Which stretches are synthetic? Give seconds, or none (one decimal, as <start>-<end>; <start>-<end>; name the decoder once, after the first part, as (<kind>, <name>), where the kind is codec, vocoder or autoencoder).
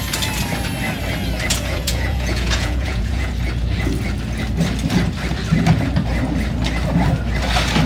1.5-3.3 (vocoder, Vocos)